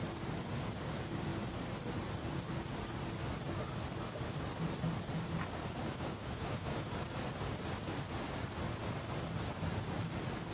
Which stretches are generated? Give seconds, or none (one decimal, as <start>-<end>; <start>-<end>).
5.8-6.9